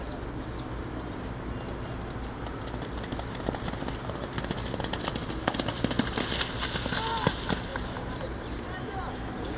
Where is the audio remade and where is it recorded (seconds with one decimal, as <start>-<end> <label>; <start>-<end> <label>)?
0.0-7.7 recorded; 7.7-9.1 remade; 9.1-9.6 recorded